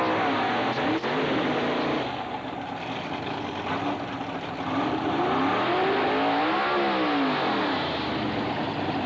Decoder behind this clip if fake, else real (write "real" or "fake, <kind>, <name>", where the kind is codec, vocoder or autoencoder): real